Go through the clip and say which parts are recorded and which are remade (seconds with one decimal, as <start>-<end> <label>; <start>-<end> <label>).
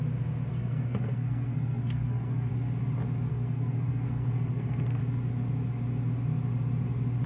0.0-0.5 recorded; 0.5-2.5 remade; 2.5-3.3 recorded; 3.3-5.0 remade; 5.0-7.3 recorded